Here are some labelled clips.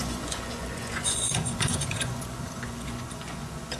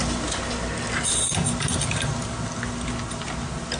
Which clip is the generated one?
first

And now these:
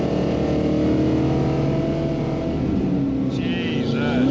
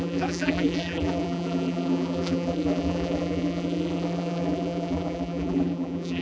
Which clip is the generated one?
second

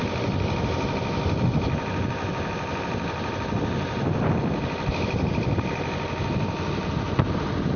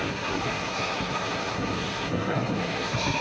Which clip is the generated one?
second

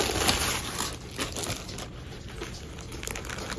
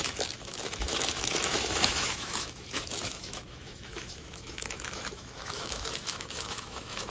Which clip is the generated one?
second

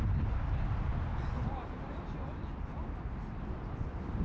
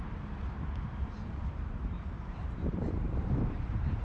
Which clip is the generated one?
second